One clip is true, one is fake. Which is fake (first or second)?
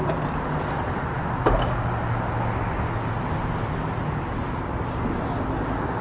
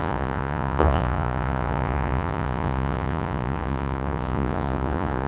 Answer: second